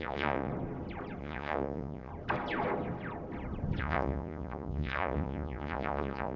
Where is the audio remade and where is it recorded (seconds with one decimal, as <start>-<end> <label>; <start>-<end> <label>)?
0.0-0.5 remade; 0.5-1.2 recorded; 1.2-2.1 remade; 2.1-3.8 recorded; 3.8-6.4 remade

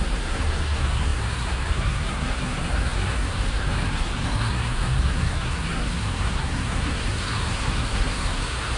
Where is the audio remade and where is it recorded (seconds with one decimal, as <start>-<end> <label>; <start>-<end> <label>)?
0.0-8.8 remade

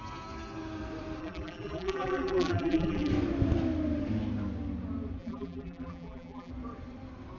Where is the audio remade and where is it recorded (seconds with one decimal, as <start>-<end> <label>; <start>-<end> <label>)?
0.0-1.2 recorded; 1.2-3.1 remade; 3.1-5.2 recorded; 5.2-6.5 remade; 6.5-7.4 recorded

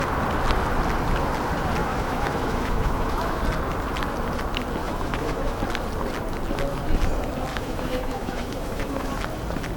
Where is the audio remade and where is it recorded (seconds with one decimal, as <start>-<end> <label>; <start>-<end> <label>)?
0.0-1.8 recorded; 1.8-3.4 remade; 3.4-4.8 recorded; 4.8-5.6 remade; 5.6-7.5 recorded; 7.5-9.1 remade; 9.1-9.8 recorded